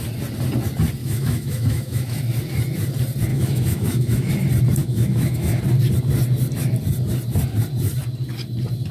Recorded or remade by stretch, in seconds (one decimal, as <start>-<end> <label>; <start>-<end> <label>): 0.0-1.0 recorded; 1.0-2.2 remade; 2.2-3.3 recorded; 3.3-4.3 remade; 4.3-4.8 recorded; 4.8-5.6 remade; 5.6-8.9 recorded